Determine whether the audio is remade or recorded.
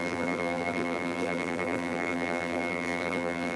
remade